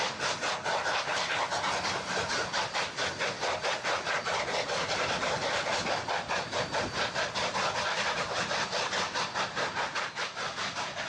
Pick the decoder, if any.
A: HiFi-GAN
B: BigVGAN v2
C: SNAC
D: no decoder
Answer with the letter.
D